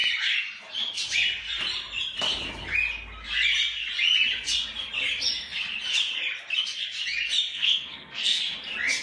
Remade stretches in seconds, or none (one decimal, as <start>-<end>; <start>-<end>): 7.5-8.4